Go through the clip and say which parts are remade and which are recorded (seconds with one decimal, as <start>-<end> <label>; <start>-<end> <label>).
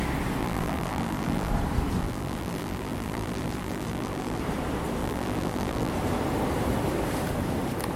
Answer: 0.0-0.4 recorded; 0.4-1.5 remade; 1.5-2.0 recorded; 2.0-4.4 remade; 4.4-5.0 recorded; 5.0-5.9 remade; 5.9-8.0 recorded